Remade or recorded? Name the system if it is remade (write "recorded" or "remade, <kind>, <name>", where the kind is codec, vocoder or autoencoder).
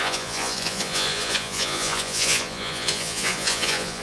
remade, vocoder, Vocos